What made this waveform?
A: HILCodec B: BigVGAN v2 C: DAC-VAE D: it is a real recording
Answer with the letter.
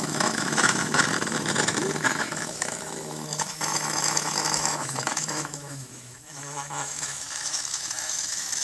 C